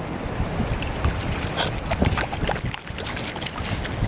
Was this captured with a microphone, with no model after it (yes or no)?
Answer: yes